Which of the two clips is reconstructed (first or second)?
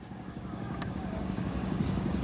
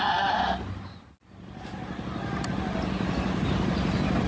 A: first